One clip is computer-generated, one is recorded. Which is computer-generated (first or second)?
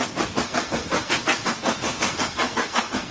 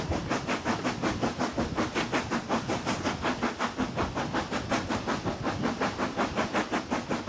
first